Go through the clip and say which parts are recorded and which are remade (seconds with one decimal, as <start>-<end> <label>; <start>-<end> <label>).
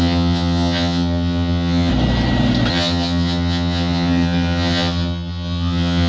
0.0-1.9 remade; 1.9-2.7 recorded; 2.7-6.1 remade